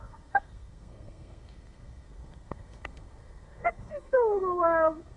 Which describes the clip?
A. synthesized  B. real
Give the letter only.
A